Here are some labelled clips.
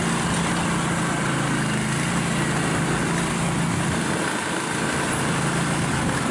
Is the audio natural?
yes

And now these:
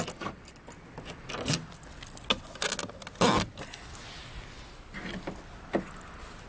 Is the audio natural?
yes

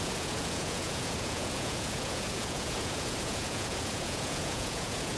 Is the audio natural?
no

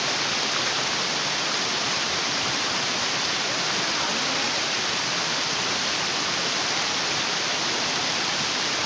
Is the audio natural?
yes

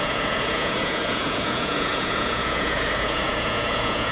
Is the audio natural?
no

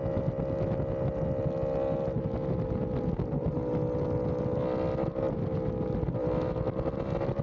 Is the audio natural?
yes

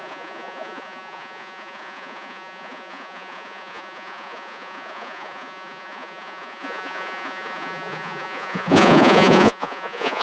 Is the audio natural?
no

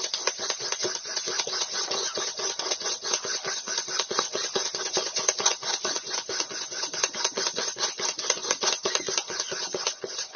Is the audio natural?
no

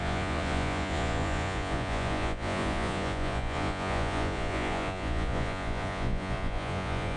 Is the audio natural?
no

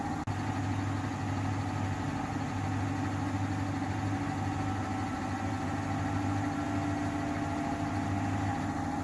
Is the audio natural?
yes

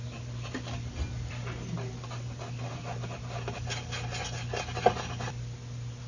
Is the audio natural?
yes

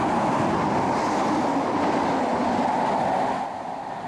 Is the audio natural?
yes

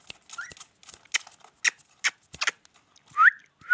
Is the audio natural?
yes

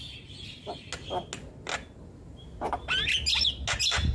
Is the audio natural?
yes